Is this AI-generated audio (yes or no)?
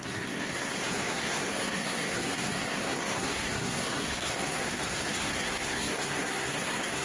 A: yes